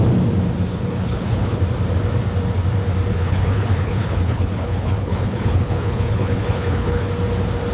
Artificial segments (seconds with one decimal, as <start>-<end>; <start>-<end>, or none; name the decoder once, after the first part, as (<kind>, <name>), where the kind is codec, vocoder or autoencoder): 0.7-1.6 (codec, HILCodec); 3.1-7.1